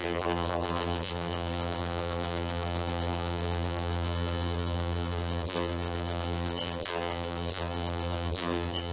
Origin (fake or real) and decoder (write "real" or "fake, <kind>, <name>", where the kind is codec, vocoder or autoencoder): fake, vocoder, BigVGAN v2